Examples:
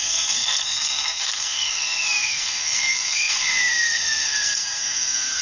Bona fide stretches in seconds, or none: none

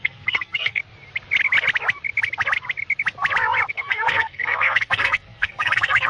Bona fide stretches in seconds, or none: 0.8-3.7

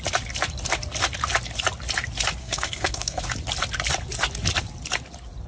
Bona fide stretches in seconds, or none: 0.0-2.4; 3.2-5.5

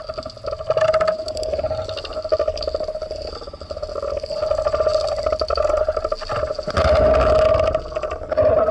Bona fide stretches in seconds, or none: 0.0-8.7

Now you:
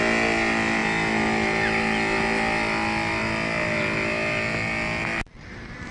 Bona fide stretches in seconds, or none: 0.0-5.9